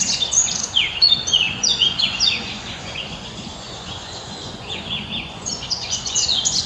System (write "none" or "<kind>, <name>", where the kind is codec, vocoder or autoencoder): vocoder, Vocos